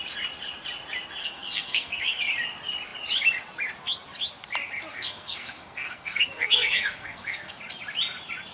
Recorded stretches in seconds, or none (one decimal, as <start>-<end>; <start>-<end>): 0.0-1.2; 2.2-4.9; 7.6-8.5